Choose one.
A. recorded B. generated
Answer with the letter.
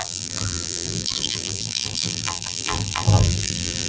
B